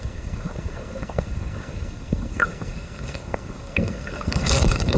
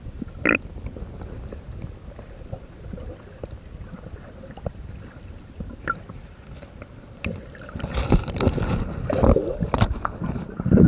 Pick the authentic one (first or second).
second